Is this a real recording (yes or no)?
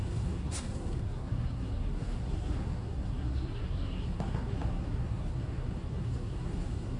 no